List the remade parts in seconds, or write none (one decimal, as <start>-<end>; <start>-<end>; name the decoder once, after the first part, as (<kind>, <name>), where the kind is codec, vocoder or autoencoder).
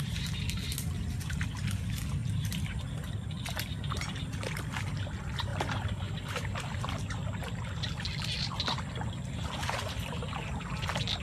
5.5-7.0 (vocoder, BigVGAN v2); 9.6-10.3